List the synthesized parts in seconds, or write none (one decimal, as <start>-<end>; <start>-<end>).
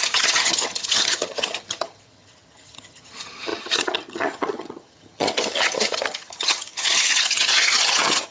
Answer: 0.0-8.3